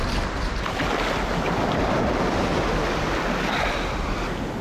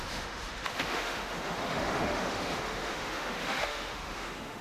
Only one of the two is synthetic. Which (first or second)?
second